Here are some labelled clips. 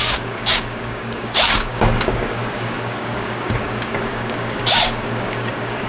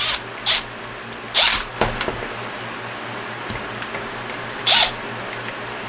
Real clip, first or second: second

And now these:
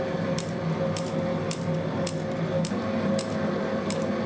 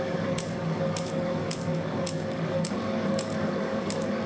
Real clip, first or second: first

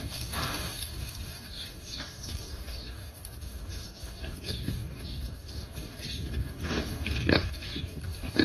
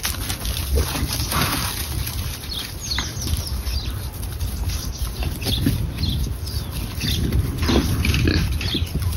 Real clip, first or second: second